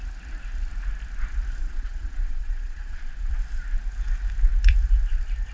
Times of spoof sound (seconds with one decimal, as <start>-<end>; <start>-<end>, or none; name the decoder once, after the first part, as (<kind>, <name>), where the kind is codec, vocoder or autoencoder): 1.6-3.3 (vocoder, Vocos)